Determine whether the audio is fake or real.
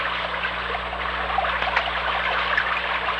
real